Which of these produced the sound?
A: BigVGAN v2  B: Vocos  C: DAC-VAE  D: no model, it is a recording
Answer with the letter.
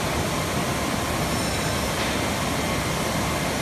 D